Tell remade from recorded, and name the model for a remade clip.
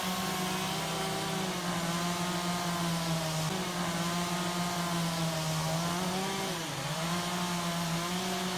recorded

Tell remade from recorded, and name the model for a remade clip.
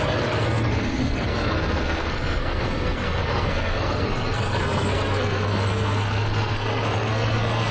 remade, codec, SNAC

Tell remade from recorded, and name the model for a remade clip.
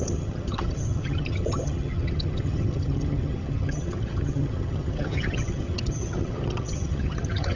remade, vocoder, HiFi-GAN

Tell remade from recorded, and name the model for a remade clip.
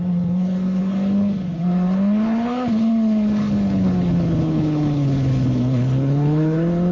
remade, codec, HILCodec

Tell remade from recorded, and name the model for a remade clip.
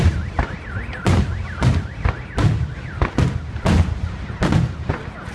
recorded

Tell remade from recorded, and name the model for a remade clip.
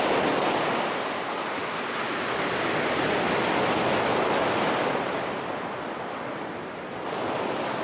recorded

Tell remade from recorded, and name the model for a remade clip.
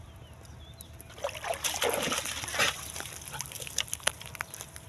recorded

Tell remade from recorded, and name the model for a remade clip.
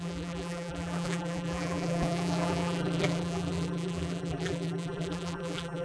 remade, vocoder, BigVGAN v2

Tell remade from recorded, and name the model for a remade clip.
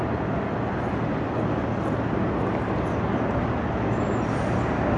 recorded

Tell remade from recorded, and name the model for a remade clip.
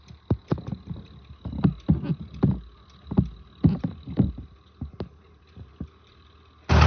recorded